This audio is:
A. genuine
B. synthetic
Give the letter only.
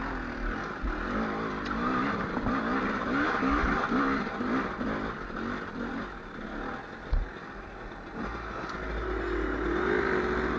A